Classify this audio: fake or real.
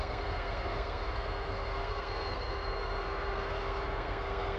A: fake